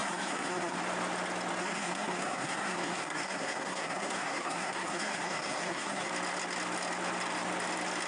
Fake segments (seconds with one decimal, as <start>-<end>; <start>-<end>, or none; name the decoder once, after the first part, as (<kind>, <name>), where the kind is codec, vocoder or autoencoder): 0.0-0.8 (codec, SNAC); 1.6-6.1